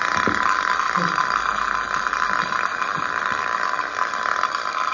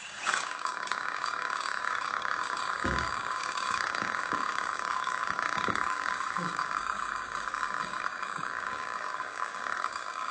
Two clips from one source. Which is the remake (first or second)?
second